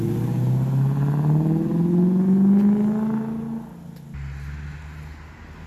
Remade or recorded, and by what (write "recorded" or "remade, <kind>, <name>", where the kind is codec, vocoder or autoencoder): recorded